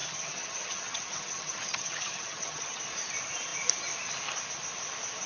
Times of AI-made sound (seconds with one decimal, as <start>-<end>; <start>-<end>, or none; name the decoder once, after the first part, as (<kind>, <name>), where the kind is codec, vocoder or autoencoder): 0.0-2.8 (vocoder, HiFi-GAN)